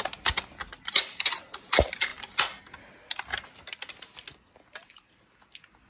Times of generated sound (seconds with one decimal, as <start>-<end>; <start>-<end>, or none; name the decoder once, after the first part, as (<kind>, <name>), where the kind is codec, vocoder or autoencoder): none